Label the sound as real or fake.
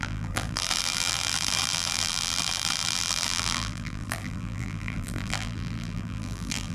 fake